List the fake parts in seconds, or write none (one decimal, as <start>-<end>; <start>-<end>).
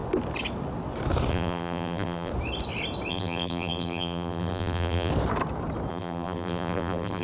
1.3-2.3; 3.1-5.1; 5.9-7.2